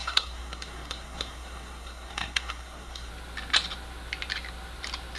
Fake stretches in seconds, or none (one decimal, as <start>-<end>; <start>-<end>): 0.0-3.1